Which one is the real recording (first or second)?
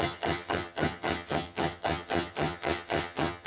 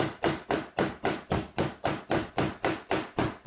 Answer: second